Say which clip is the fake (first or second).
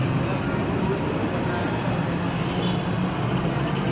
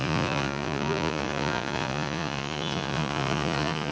second